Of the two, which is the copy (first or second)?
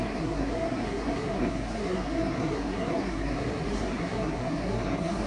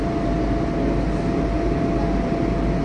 first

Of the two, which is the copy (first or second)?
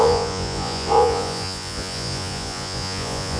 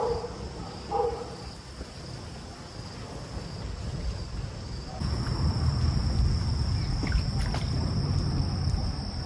first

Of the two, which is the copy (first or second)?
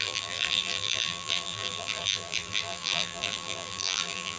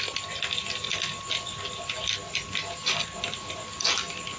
first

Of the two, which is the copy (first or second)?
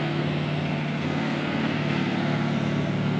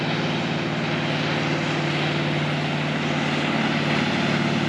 first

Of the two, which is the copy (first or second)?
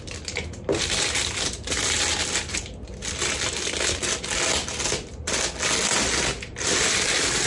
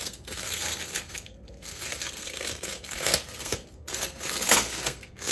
second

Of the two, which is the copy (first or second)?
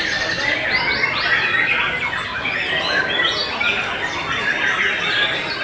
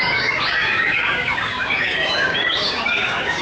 second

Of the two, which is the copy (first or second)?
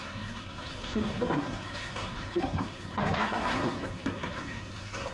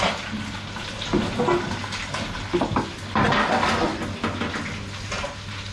first